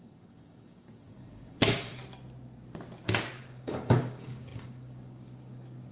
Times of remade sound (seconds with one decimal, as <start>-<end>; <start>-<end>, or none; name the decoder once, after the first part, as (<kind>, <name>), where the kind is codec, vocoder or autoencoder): 0.0-2.0 (codec, DAC); 3.4-5.9